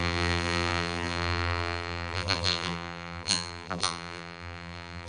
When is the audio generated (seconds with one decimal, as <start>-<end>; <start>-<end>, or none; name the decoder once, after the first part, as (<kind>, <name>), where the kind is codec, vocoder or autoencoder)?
0.0-5.1 (vocoder, BigVGAN v2)